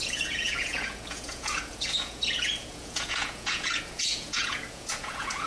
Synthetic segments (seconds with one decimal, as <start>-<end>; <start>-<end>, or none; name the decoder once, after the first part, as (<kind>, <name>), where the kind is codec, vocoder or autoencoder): 0.0-5.5 (vocoder, Vocos)

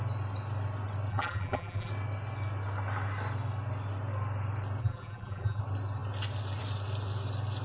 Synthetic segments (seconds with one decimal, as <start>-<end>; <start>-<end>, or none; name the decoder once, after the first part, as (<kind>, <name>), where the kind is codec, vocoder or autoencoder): 1.1-1.9 (vocoder, BigVGAN v2); 4.8-5.6

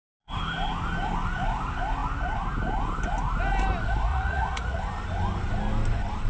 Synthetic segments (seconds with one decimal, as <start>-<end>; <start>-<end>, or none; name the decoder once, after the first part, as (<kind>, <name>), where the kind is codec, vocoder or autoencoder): 4.1-4.8 (vocoder, Vocos)

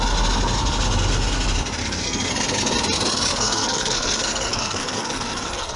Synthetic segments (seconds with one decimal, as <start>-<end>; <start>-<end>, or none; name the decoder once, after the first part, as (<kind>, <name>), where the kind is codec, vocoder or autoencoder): 1.8-2.3 (codec, SNAC); 3.3-5.8

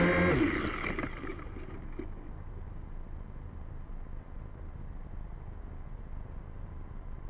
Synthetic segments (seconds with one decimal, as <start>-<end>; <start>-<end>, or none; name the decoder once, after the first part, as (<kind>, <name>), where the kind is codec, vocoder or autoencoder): none